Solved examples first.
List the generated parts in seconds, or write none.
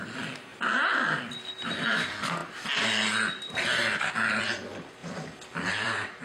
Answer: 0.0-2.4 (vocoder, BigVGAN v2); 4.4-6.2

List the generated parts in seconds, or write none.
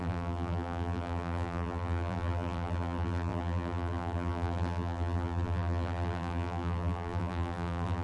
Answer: 0.0-8.0 (vocoder, BigVGAN v2)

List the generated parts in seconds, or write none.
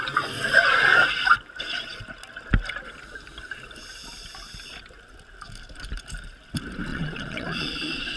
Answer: 6.9-8.2 (vocoder, Vocos)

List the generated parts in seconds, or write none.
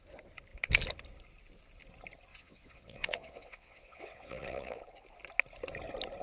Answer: 2.3-4.8 (vocoder, WaveNeXt)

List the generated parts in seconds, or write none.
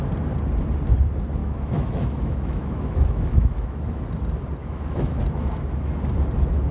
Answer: 1.4-4.0 (autoencoder, DAC-VAE); 4.6-5.2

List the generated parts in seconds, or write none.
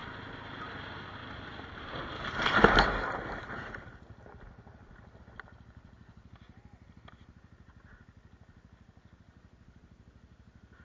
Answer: none